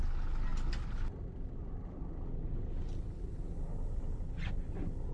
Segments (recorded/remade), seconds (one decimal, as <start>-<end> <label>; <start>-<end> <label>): 0.0-5.1 recorded